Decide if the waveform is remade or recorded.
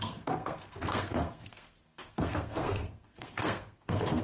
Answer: remade